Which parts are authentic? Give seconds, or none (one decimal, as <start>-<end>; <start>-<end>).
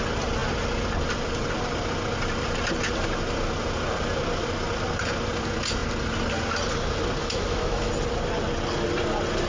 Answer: 0.0-7.2; 7.9-9.5